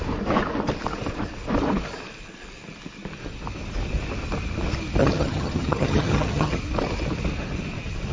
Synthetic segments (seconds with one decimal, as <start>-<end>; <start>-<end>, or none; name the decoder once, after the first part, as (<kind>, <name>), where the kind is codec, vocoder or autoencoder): 5.0-6.6 (vocoder, HiFi-GAN)